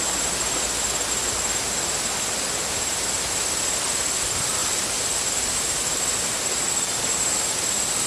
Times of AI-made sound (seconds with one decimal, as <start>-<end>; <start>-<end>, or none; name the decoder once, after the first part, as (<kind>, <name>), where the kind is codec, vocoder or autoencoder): 4.6-6.7 (vocoder, BigVGAN v2)